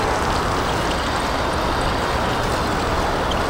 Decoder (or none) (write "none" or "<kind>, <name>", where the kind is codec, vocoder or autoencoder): none